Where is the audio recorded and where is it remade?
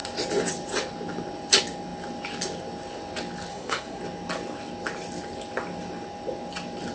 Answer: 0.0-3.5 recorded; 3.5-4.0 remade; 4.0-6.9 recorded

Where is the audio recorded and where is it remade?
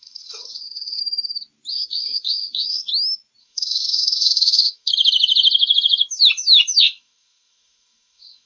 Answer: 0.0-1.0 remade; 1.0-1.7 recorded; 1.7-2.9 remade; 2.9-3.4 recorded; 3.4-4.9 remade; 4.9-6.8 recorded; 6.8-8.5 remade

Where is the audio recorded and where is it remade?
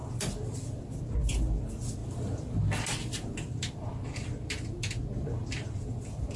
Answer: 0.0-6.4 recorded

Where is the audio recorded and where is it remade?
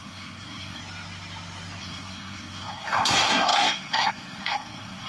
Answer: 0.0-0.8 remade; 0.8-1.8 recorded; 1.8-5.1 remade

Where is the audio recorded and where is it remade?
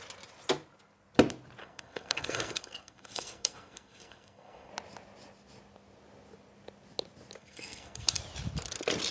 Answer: 0.0-1.6 recorded; 1.6-4.7 remade; 4.7-7.4 recorded; 7.4-8.2 remade; 8.2-9.1 recorded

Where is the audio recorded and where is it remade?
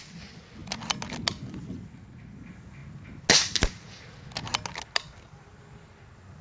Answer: 0.0-6.4 recorded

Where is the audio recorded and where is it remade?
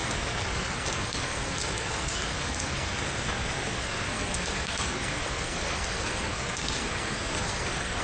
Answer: 0.0-8.0 remade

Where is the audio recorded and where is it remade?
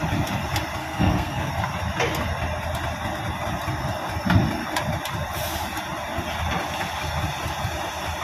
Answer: 0.0-0.8 recorded; 0.8-1.5 remade; 1.5-8.2 recorded